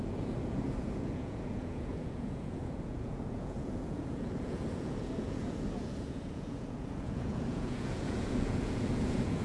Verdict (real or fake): fake